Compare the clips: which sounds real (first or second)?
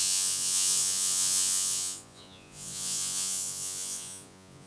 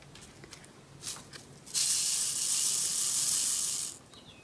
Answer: second